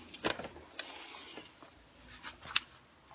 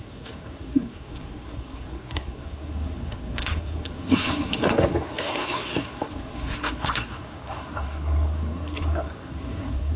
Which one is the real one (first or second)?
first